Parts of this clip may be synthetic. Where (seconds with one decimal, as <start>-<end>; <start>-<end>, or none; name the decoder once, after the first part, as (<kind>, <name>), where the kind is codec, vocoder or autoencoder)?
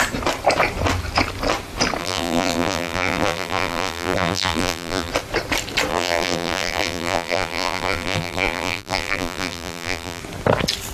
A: 2.0-5.1 (vocoder, BigVGAN v2); 5.9-10.2